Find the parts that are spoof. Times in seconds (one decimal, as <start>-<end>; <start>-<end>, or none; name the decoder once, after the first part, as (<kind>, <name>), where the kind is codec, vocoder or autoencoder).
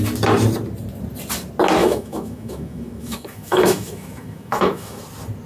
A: 1.8-5.0 (autoencoder, DAC-VAE)